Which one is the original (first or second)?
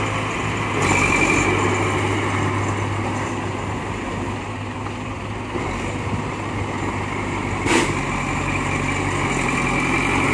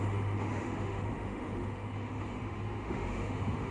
first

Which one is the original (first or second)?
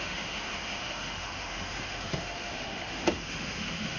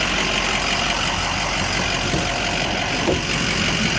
second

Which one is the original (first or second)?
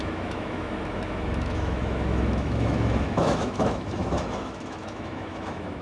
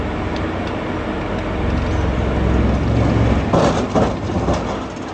second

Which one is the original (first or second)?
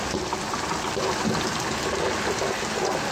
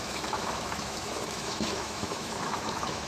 first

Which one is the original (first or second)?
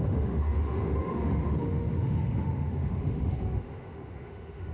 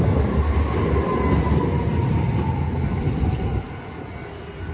second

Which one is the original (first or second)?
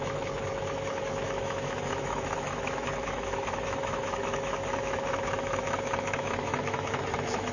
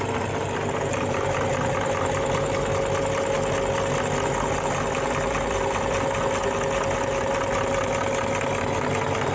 second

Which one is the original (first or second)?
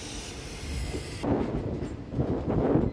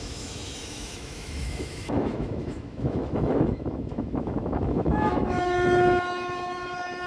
first